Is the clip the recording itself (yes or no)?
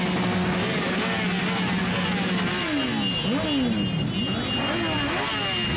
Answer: yes